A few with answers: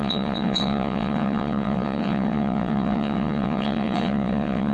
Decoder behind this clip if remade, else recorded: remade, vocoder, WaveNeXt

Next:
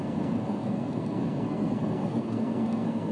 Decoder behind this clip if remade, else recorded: remade, codec, SNAC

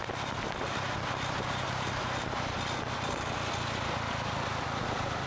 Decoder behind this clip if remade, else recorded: recorded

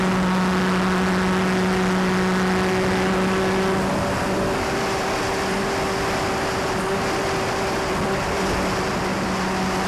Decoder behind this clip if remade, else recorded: recorded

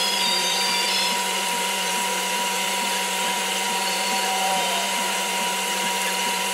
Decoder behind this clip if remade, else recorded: remade, vocoder, BigVGAN v2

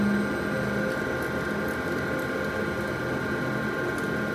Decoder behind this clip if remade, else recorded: recorded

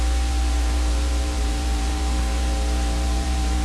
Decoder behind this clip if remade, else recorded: remade, vocoder, BigVGAN v2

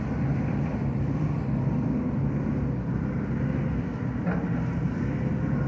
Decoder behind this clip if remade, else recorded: recorded